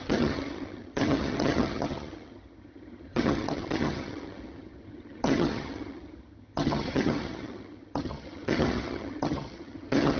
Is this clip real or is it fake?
fake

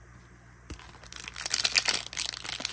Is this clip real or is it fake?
real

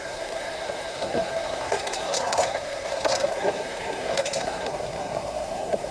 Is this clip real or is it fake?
fake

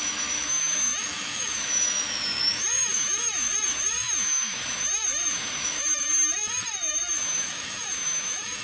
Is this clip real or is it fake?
fake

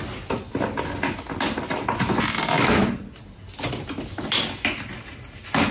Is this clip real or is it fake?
real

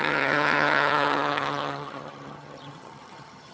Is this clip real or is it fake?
fake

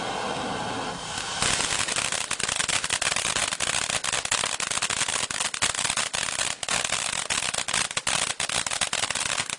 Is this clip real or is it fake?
real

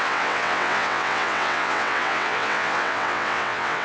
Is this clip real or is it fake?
fake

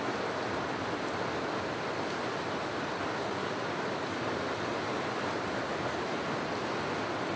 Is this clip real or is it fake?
real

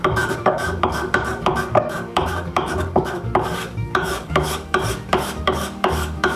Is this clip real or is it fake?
fake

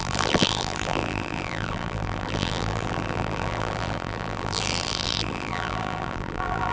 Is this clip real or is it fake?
fake